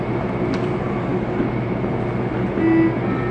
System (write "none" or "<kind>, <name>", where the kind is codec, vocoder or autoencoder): none